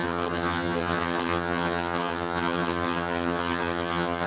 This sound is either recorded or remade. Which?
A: remade